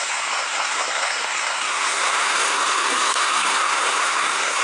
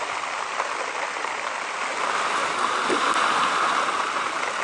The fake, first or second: first